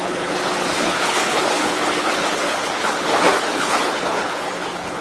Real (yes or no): no